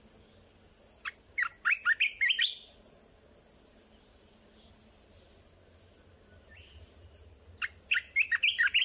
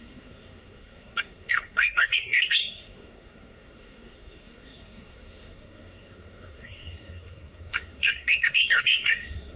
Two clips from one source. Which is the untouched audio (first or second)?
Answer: first